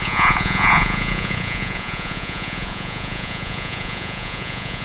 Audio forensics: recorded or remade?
remade